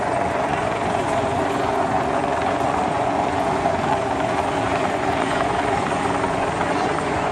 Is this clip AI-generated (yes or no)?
yes